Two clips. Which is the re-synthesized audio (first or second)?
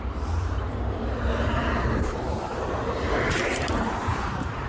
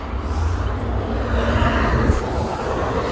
first